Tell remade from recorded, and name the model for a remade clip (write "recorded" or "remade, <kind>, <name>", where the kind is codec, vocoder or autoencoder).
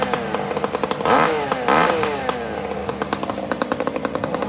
recorded